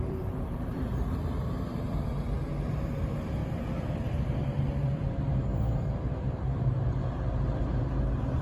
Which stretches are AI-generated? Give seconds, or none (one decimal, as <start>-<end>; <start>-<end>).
0.0-2.1; 2.7-8.4